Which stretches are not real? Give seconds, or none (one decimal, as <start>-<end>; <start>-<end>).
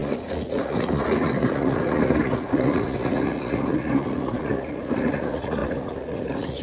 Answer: 0.0-6.6